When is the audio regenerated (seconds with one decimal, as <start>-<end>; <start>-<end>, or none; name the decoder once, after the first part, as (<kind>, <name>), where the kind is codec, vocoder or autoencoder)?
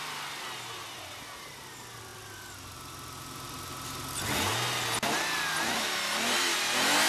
none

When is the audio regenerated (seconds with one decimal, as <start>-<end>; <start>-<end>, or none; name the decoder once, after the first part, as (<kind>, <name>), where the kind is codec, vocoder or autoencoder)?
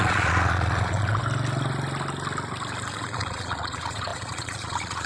0.0-1.2 (vocoder, Vocos); 2.9-5.1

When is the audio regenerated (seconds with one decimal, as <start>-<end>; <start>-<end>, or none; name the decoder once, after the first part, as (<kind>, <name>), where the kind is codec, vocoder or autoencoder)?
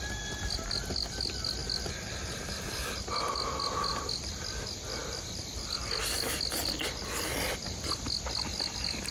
3.9-4.4 (vocoder, BigVGAN v2); 5.0-5.7